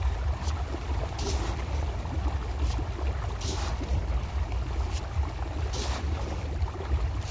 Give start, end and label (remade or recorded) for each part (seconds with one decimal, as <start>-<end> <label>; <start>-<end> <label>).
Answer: 0.0-7.3 recorded